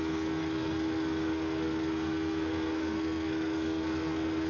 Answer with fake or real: fake